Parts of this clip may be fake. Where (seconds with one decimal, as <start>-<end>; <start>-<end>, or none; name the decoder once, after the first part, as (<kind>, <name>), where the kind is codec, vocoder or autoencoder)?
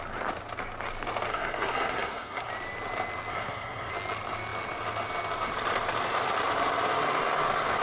1.3-2.5 (codec, SNAC); 3.3-3.9